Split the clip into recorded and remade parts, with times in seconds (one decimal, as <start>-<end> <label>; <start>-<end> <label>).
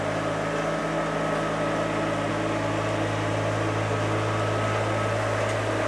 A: 0.0-5.9 recorded